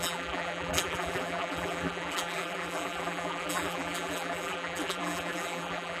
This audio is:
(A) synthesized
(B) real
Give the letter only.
A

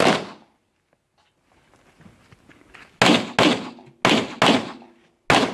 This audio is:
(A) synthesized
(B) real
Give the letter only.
B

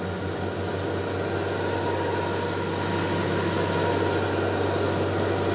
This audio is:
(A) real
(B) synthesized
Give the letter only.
A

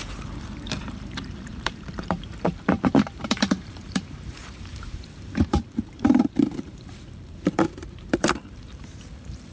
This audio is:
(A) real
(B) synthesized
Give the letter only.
B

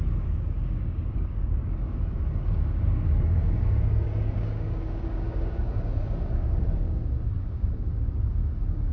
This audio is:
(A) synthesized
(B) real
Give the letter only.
A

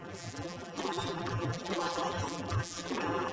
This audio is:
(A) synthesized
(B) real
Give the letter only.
A